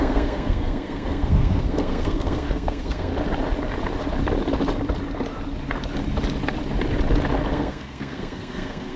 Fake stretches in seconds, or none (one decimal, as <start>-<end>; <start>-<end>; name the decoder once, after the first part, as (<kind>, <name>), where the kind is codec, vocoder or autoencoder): 0.0-3.1 (codec, SNAC); 7.5-9.0